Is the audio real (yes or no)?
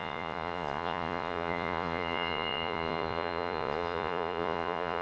no